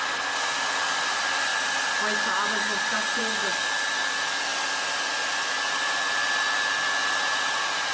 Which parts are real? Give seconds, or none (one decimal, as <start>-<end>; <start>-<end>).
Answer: 0.0-7.9